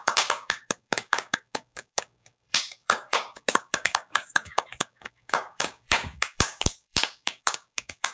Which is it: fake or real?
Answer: fake